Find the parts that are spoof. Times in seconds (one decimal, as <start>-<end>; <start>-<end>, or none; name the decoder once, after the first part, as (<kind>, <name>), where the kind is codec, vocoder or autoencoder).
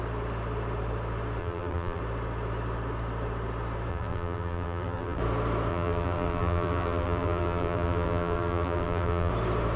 1.4-2.0 (vocoder, BigVGAN v2); 3.9-5.2; 5.7-9.3